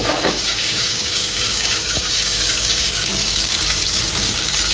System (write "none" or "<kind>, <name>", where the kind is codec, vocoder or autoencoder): codec, DAC